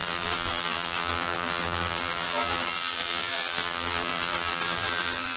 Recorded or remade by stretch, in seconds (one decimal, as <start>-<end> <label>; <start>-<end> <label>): 0.0-5.4 remade